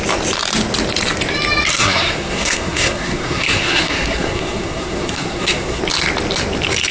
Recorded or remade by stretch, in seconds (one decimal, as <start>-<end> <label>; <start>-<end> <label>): 0.0-1.7 recorded; 1.7-5.8 remade; 5.8-6.9 recorded